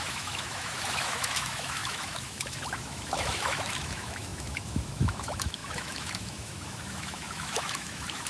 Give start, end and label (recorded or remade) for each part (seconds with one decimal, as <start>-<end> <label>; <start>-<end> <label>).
0.0-8.3 remade